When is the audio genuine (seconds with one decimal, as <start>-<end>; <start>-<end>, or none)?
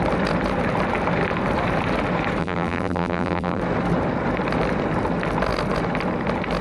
0.0-2.4; 3.6-6.6